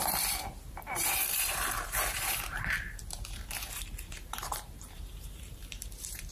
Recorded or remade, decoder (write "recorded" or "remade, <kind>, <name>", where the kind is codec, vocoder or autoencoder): remade, vocoder, BigVGAN v2